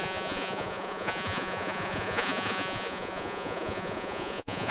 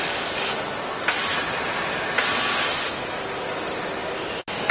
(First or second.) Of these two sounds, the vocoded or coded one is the first